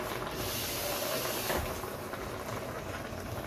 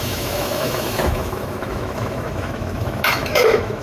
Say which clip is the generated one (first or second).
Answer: second